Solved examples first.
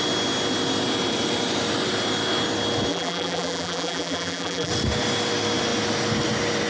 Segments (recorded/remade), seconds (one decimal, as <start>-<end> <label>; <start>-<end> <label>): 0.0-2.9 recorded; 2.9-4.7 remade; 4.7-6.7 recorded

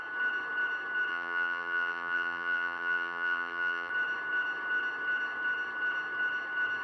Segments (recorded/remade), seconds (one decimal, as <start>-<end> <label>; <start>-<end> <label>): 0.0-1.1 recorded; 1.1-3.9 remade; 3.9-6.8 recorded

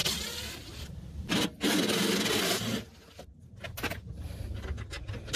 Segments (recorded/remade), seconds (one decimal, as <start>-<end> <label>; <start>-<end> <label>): 0.0-5.4 recorded

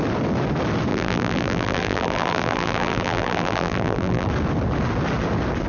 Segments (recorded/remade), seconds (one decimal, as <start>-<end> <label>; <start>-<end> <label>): 0.0-0.9 recorded; 0.9-4.3 remade; 4.3-5.7 recorded

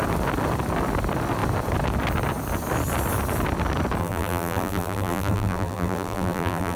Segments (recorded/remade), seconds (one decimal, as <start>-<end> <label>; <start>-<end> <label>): 0.0-4.0 recorded; 4.0-6.8 remade

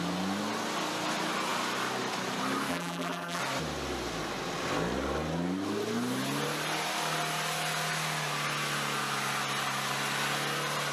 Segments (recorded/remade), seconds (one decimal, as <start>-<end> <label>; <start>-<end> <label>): 0.0-2.7 recorded; 2.7-3.4 remade; 3.4-10.9 recorded

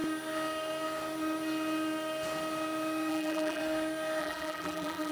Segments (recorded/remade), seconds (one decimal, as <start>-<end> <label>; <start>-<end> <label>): 0.0-3.1 recorded; 3.1-3.6 remade; 3.6-4.2 recorded; 4.2-5.1 remade